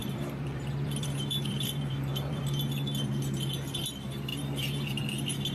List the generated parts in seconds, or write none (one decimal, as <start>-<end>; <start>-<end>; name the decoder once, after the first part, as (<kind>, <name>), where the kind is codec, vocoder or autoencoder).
0.0-2.4 (vocoder, BigVGAN v2); 4.3-5.0